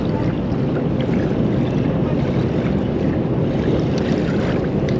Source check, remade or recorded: recorded